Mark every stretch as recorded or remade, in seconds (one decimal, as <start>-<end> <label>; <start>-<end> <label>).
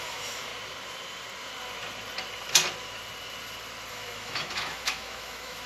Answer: 0.0-0.5 remade; 0.5-3.9 recorded; 3.9-5.7 remade